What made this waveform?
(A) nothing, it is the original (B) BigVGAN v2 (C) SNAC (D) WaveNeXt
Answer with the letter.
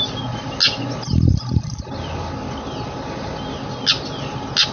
A